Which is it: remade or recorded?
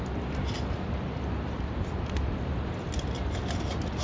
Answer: recorded